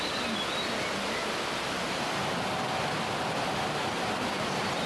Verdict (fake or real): real